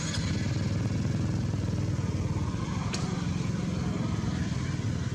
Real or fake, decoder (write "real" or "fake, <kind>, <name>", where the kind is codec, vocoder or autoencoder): real